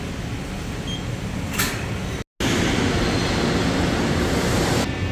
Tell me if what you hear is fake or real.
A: real